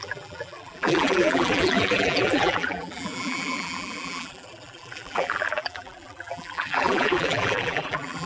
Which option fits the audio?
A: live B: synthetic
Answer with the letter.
B